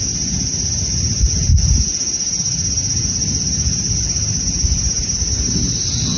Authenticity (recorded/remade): recorded